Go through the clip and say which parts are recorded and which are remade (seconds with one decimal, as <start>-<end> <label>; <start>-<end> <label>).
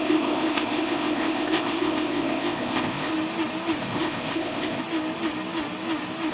0.0-3.1 remade; 3.1-3.8 recorded; 3.8-4.8 remade; 4.8-6.3 recorded